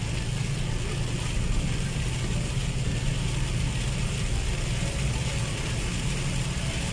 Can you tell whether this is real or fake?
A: real